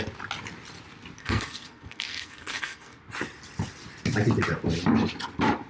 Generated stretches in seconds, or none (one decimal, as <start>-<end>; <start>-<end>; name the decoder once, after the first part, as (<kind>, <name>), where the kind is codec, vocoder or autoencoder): 1.2-3.0 (codec, SNAC)